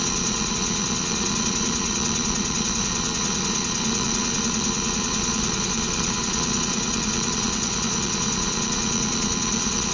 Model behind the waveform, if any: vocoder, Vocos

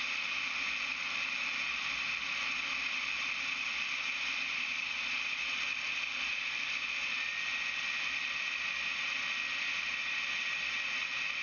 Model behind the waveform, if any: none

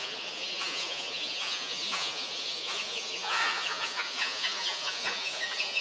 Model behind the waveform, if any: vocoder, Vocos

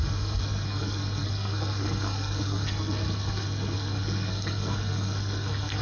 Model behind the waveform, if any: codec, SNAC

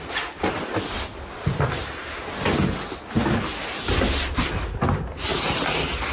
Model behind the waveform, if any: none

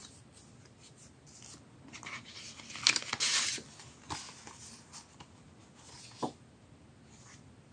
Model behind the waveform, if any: none